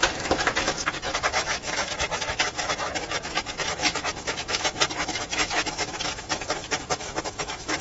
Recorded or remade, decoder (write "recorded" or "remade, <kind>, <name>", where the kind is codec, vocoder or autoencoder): remade, autoencoder, DAC-VAE